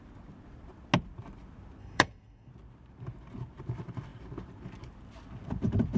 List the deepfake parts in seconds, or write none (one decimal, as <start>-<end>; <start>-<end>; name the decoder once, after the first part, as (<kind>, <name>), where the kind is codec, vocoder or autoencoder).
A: 1.8-2.5 (codec, DAC)